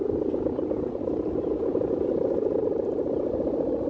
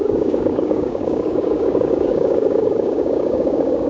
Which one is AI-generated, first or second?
second